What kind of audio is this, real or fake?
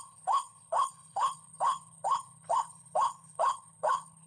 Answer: fake